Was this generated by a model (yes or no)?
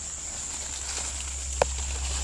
no